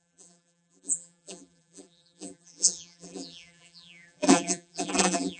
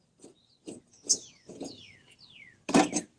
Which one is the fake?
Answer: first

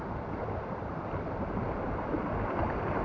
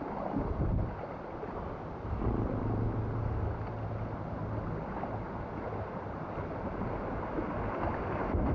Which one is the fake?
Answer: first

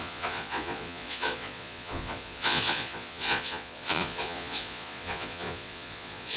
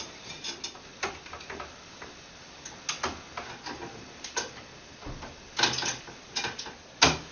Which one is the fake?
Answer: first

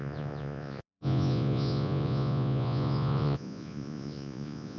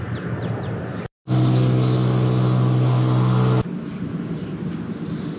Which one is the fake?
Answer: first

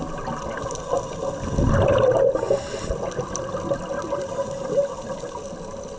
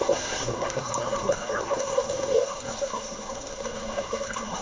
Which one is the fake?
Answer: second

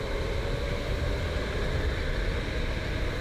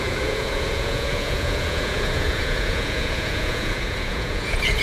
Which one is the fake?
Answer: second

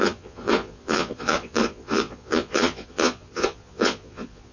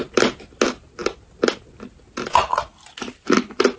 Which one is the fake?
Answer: first